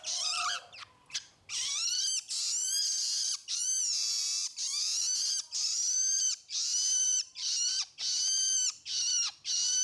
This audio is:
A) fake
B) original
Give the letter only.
A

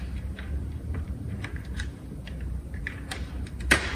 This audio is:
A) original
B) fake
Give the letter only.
B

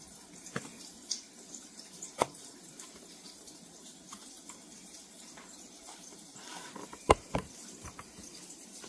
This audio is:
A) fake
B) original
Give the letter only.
A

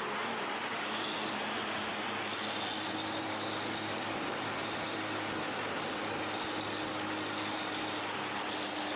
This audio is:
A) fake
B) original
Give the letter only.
B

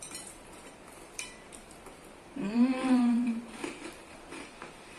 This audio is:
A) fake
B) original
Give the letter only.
A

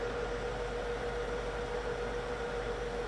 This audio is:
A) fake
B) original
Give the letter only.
A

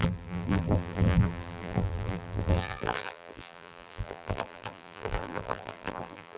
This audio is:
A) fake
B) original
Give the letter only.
A